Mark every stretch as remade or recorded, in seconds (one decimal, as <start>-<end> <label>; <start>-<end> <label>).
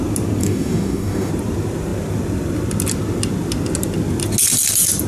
0.0-0.4 recorded; 0.4-1.3 remade; 1.3-5.1 recorded